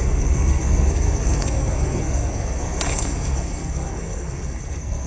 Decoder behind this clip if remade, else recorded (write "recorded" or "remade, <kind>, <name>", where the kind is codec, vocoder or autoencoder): remade, codec, SNAC